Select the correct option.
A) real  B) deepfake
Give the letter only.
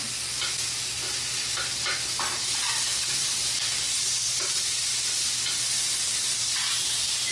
A